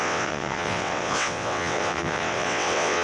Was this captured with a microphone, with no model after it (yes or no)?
no